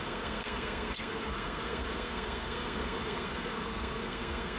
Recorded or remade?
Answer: remade